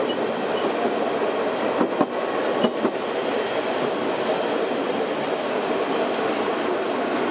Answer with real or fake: real